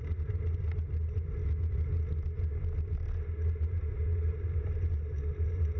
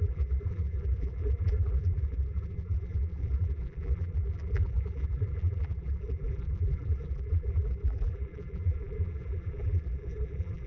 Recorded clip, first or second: first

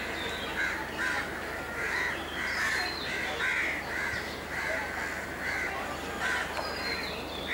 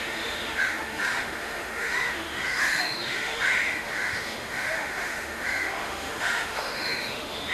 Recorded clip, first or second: first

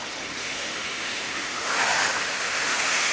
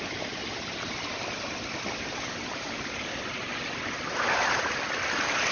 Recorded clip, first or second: second